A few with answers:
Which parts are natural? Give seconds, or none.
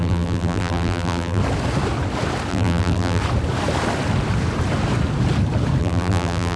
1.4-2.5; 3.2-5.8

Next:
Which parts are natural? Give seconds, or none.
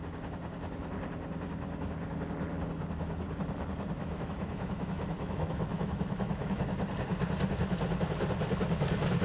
0.0-4.0; 6.6-9.2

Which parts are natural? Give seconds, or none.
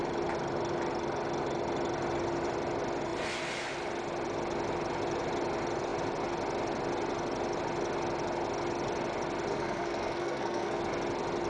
0.0-9.5; 10.8-11.5